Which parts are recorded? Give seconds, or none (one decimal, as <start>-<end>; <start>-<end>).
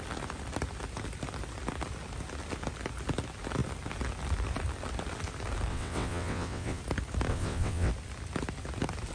0.0-5.7; 6.8-7.3; 7.9-9.1